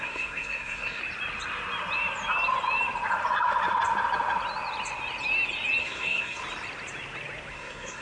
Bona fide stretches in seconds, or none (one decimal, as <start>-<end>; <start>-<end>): 1.0-5.8; 6.4-7.5